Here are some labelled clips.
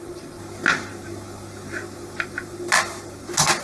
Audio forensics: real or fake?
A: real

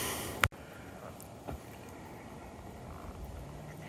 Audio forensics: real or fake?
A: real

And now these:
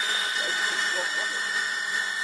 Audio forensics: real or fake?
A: fake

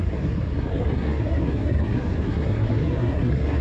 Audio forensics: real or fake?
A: fake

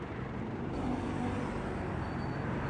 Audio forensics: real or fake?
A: real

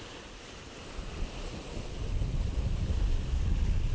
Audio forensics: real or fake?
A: real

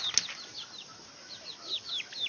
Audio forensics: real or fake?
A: real